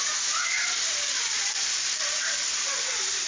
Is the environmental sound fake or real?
real